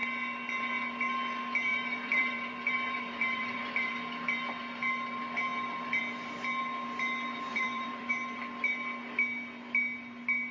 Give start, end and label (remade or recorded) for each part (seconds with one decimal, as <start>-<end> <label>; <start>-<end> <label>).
0.0-1.7 recorded; 1.7-3.9 remade; 3.9-7.5 recorded; 7.5-8.1 remade; 8.1-10.5 recorded